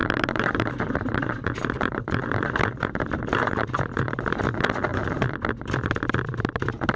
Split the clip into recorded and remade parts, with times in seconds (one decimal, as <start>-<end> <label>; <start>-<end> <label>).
0.0-4.2 remade; 4.2-7.0 recorded